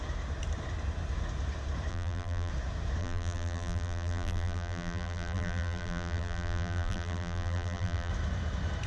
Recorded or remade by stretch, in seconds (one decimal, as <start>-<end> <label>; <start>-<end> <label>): 0.0-1.9 recorded; 1.9-2.5 remade; 2.5-3.0 recorded; 3.0-8.1 remade; 8.1-8.9 recorded